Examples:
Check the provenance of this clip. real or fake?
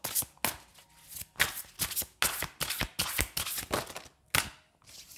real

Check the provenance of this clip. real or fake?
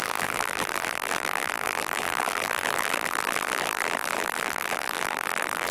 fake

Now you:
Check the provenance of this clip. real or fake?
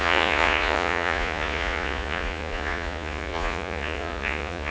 fake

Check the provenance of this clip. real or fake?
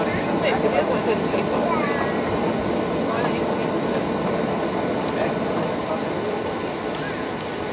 real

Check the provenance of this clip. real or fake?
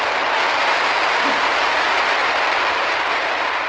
real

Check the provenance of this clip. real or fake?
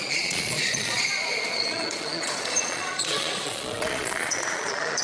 fake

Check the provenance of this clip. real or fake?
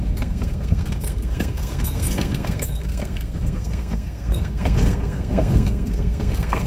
fake